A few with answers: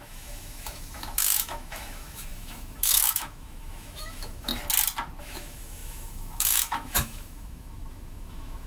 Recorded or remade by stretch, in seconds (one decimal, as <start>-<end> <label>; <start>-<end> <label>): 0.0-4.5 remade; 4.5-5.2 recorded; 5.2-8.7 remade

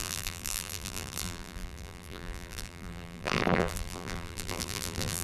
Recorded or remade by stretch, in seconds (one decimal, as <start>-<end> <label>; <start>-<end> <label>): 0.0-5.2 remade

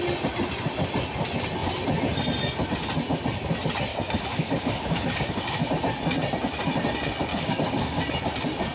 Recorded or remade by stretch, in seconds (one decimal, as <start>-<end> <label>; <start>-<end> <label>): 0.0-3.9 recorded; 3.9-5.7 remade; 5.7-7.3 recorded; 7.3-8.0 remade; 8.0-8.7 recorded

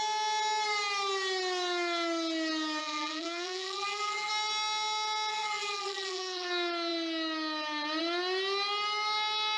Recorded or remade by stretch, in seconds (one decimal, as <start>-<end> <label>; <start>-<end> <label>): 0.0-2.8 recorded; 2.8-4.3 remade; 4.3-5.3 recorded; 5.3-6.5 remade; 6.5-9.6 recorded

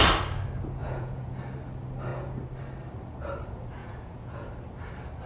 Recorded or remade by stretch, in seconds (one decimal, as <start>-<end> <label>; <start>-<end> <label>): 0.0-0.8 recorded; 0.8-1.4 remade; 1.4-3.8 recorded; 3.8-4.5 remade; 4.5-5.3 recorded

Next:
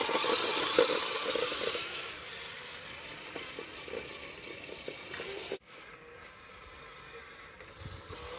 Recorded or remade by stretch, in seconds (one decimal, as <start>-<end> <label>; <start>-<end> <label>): 0.0-8.4 recorded

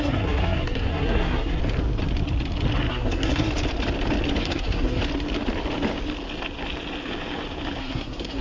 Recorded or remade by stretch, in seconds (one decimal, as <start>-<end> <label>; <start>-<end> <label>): 0.0-1.6 remade; 1.6-2.9 recorded; 2.9-3.5 remade; 3.5-4.4 recorded; 4.4-5.0 remade; 5.0-7.8 recorded; 7.8-8.4 remade